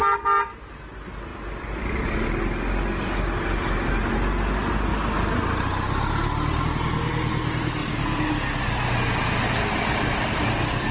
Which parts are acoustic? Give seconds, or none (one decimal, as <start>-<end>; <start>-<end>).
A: 0.0-10.9